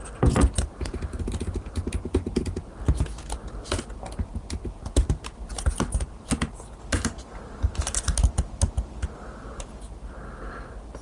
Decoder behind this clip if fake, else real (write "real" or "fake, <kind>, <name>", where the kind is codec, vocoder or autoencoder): real